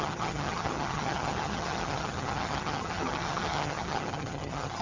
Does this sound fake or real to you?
fake